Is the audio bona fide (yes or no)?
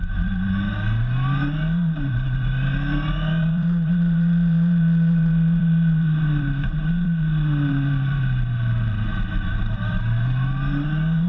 no